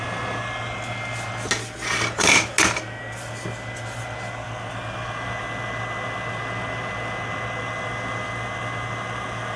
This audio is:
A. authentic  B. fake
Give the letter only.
A